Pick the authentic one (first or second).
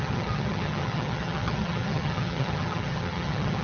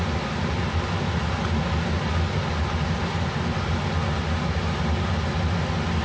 second